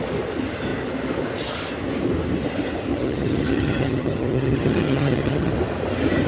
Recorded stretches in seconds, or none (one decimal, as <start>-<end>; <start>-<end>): 0.0-2.9; 5.5-6.3